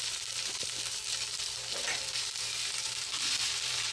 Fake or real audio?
fake